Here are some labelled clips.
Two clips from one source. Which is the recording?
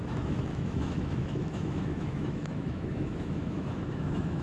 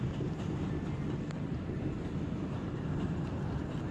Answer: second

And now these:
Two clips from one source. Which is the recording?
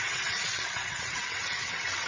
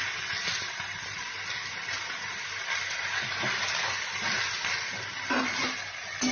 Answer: second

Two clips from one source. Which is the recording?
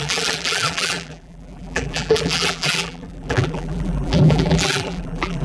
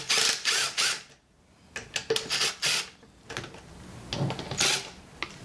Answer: second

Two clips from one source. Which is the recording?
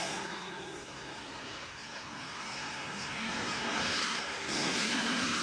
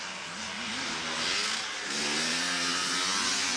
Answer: second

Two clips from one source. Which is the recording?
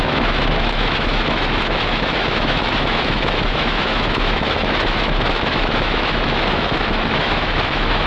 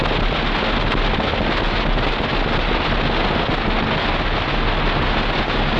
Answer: second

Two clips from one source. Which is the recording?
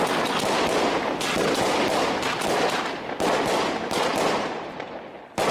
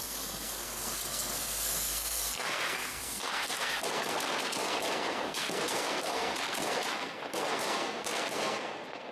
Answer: first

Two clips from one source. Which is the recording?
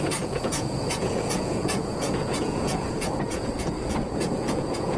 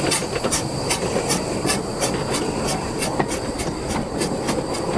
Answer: second